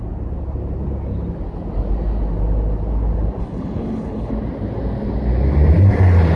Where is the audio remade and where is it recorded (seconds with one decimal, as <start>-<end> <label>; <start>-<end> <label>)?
0.0-3.4 recorded; 3.4-4.3 remade; 4.3-6.4 recorded